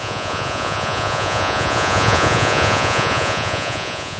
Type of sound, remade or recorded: remade